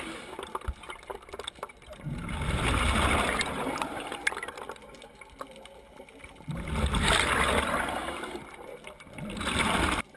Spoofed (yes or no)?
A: no